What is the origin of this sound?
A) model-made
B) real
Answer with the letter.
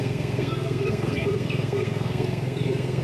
A